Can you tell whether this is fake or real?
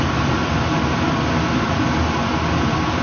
real